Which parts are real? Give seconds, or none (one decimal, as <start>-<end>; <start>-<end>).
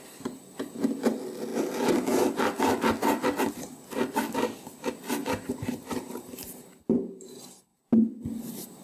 0.0-5.2; 6.9-8.8